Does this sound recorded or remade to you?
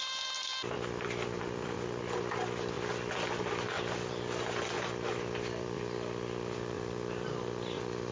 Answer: remade